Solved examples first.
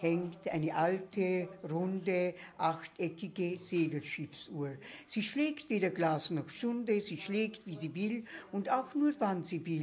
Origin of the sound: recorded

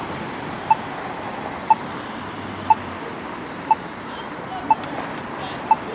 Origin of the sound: recorded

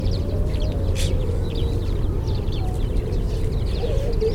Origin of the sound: recorded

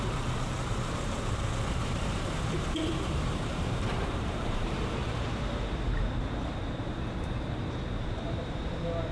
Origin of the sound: remade